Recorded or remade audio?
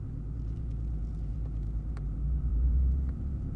remade